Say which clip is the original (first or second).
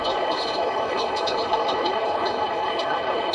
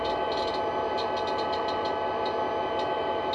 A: second